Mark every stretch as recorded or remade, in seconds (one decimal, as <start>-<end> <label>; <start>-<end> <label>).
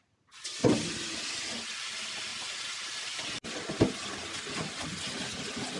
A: 0.0-0.6 recorded; 0.6-1.2 remade; 1.2-5.8 recorded